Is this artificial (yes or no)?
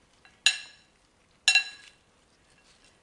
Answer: no